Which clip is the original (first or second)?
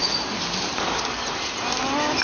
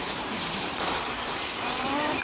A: first